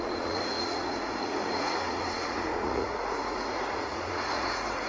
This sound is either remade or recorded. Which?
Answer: remade